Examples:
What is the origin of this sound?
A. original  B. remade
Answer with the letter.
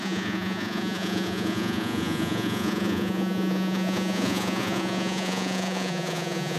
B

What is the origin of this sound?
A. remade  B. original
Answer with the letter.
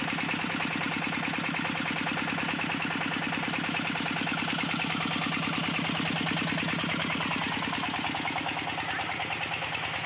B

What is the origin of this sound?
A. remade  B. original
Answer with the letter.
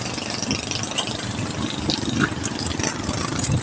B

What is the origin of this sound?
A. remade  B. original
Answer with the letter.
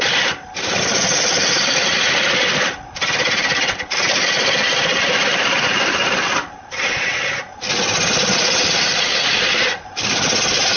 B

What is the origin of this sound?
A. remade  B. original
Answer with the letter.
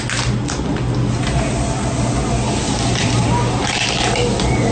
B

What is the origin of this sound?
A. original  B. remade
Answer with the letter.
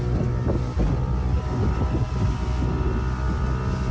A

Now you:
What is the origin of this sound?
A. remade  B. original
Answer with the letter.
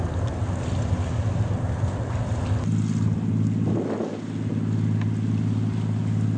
B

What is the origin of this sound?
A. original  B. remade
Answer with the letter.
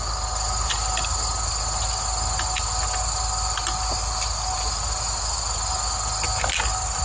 A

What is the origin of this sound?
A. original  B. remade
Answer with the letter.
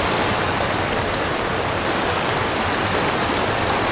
A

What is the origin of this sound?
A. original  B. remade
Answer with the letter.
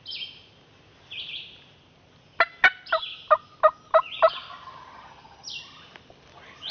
A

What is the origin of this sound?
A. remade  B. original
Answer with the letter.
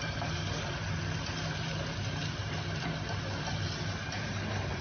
B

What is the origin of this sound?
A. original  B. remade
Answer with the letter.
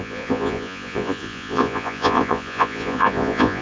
B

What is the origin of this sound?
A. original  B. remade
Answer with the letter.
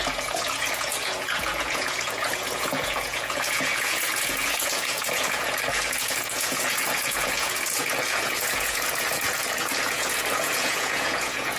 B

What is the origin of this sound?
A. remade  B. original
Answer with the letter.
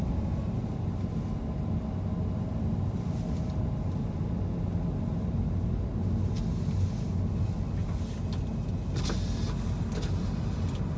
B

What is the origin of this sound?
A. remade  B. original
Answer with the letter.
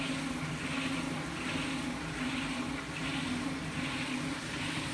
B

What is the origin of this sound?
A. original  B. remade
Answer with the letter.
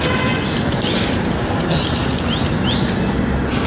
A